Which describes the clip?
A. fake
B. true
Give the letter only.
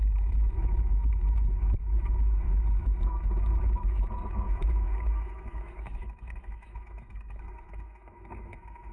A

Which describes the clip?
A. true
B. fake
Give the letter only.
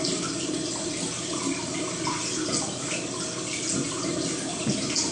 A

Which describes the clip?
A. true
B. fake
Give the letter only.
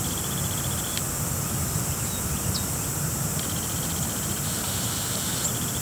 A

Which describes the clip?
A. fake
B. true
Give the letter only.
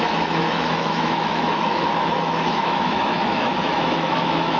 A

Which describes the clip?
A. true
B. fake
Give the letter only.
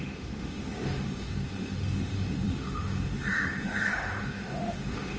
B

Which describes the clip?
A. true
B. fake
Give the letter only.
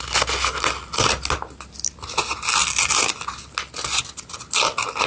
A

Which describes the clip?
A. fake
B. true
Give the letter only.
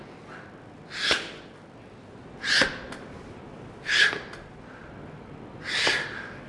B